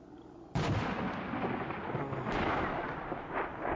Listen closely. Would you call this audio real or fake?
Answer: real